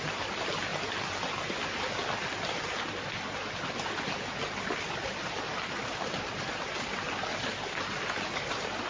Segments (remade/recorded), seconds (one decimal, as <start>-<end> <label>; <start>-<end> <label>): 0.0-0.7 remade; 0.7-4.9 recorded; 4.9-8.9 remade